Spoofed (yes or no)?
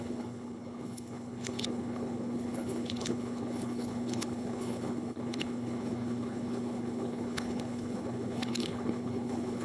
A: yes